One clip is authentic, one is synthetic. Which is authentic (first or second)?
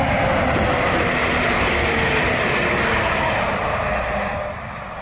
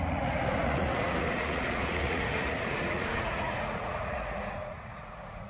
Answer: first